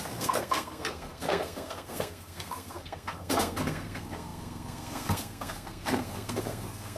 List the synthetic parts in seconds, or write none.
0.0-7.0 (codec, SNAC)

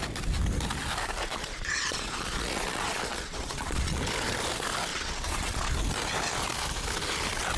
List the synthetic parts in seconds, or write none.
1.2-4.0 (vocoder, Vocos); 4.9-5.7

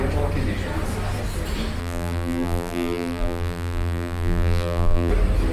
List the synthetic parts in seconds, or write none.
1.8-5.1 (vocoder, BigVGAN v2)

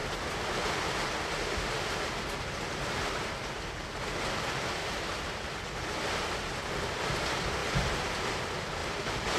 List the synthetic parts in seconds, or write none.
0.0-0.8 (vocoder, BigVGAN v2); 4.8-5.6; 8.8-9.4

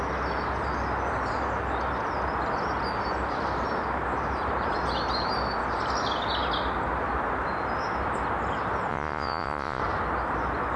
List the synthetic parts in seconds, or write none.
8.9-9.8 (vocoder, Vocos)

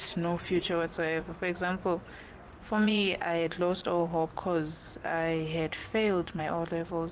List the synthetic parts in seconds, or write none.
0.0-4.3 (vocoder, Vocos); 5.8-6.4

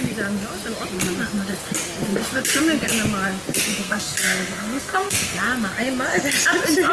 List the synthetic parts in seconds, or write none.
3.7-5.4 (codec, SNAC)

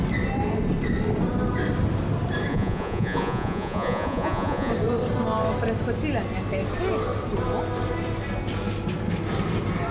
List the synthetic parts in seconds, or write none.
2.5-4.7 (vocoder, Vocos)